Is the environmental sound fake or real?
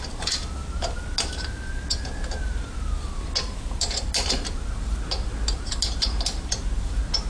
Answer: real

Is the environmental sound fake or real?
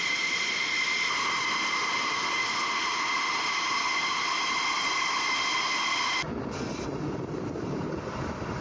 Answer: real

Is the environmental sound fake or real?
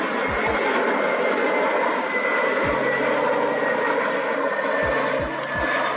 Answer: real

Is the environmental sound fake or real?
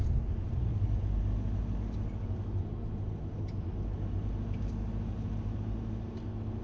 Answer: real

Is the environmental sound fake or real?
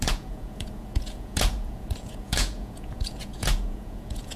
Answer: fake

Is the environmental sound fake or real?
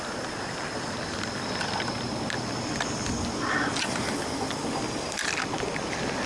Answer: real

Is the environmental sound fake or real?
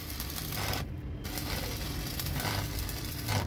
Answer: fake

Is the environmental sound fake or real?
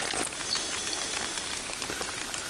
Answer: real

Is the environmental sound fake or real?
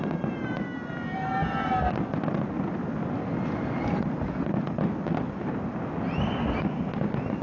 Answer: real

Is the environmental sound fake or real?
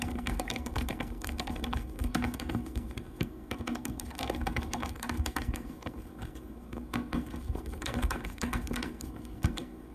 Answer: fake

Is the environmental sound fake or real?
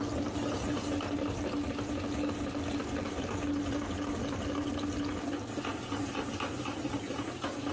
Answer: real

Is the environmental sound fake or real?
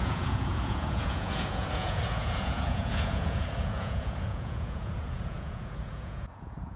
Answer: fake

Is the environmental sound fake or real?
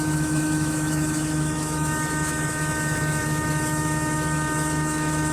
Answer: fake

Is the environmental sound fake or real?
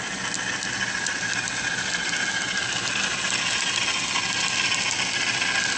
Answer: real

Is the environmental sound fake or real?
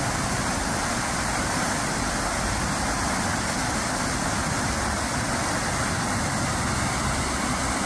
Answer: real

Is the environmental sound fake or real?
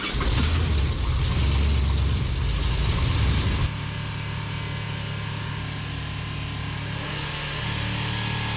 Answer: real